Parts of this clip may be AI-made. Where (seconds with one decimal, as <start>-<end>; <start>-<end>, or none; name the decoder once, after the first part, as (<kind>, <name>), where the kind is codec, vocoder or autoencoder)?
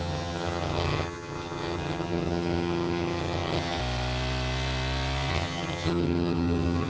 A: 0.0-3.8 (vocoder, HiFi-GAN); 5.3-6.9